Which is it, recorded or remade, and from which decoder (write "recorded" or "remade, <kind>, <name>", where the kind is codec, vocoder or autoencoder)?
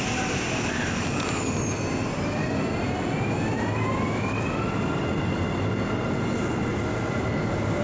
recorded